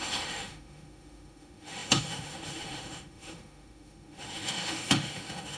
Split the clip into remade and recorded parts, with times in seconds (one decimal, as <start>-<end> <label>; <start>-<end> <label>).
0.0-5.6 remade